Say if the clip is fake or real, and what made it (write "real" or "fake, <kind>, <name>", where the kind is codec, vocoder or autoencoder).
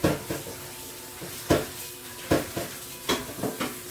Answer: real